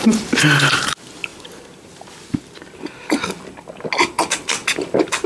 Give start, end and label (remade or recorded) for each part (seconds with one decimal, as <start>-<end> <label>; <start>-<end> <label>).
0.0-5.3 recorded